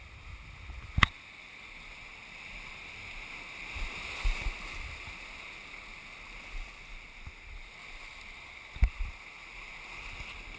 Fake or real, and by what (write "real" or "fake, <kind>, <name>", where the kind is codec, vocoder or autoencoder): real